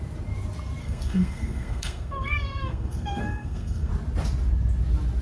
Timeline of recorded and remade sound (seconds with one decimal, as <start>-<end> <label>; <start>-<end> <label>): 0.0-0.8 recorded; 0.8-3.9 remade; 3.9-5.2 recorded